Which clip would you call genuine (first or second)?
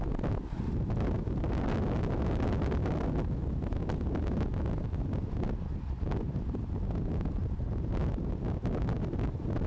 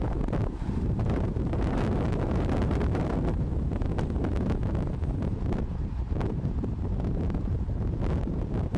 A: first